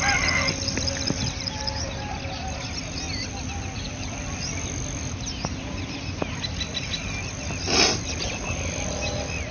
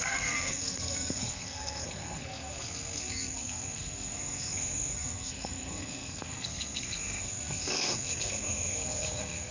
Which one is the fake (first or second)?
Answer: second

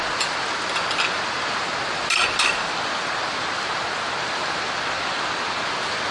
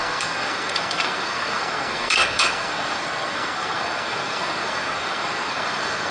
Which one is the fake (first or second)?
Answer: second